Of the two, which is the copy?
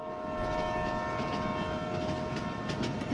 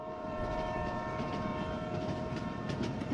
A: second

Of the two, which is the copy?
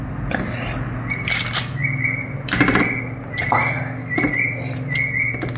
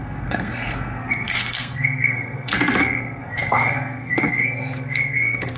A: second